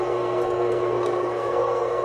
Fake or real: fake